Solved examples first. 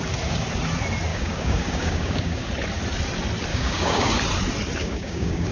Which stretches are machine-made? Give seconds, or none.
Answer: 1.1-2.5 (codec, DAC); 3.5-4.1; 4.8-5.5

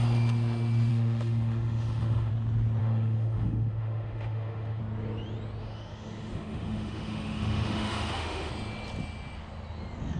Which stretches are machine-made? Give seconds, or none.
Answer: 0.9-2.3 (autoencoder, DAC-VAE); 2.8-4.8; 5.6-8.5